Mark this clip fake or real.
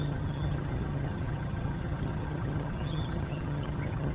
fake